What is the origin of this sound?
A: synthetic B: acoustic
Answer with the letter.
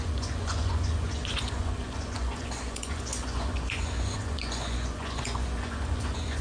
A